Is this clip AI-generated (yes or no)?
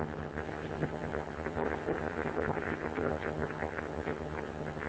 yes